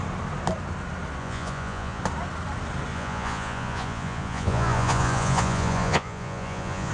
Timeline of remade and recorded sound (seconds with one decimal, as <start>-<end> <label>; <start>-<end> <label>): 0.0-1.2 recorded; 1.2-2.0 remade; 2.0-2.9 recorded; 2.9-6.9 remade